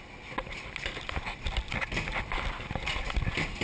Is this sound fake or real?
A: real